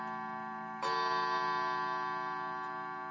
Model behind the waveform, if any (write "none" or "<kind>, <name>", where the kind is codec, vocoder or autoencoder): none